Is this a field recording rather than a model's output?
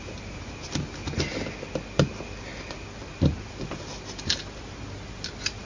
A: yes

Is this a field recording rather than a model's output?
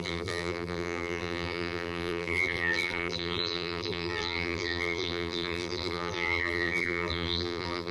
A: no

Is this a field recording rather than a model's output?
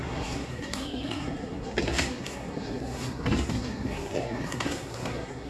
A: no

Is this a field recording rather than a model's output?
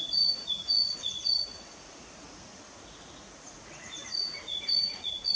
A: no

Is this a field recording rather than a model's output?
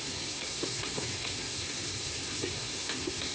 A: no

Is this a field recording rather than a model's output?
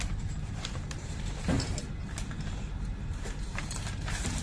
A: no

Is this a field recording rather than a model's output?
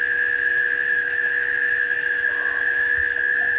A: no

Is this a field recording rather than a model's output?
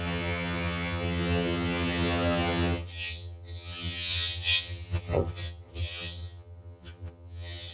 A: no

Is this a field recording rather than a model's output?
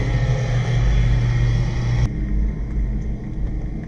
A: yes